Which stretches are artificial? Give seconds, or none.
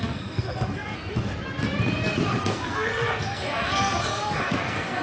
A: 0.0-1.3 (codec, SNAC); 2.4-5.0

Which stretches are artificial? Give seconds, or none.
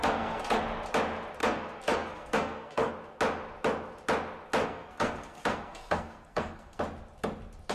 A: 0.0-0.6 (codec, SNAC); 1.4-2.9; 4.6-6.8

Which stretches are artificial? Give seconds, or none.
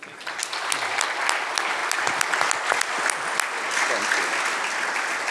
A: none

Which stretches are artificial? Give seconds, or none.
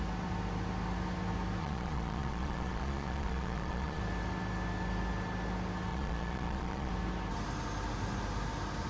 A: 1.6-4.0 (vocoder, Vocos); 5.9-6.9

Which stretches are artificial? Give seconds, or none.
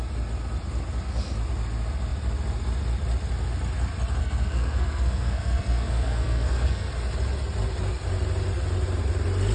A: 4.2-6.9 (codec, SNAC)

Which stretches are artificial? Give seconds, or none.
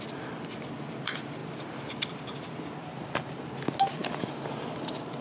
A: none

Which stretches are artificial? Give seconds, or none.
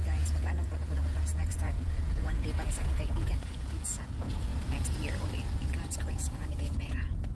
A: 0.0-4.5 (vocoder, Vocos); 6.1-7.3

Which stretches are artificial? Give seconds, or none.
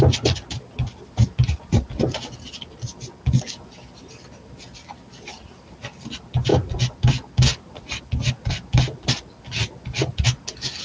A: none